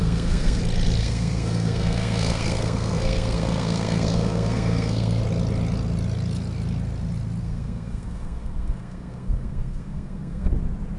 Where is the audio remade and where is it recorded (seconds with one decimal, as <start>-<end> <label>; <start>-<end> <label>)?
0.0-0.6 remade; 0.6-1.0 recorded; 1.0-5.2 remade; 5.2-7.4 recorded; 7.4-10.5 remade; 10.5-11.0 recorded